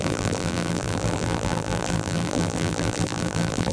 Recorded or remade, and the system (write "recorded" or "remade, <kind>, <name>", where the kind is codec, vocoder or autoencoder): remade, vocoder, BigVGAN v2